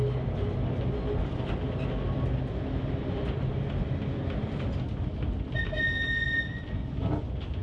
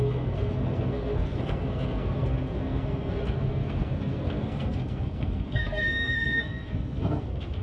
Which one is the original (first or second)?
first